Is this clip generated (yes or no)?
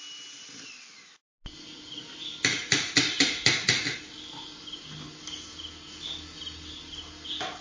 no